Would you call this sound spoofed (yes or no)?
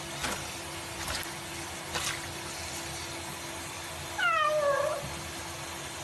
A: no